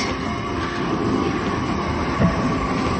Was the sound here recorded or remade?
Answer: recorded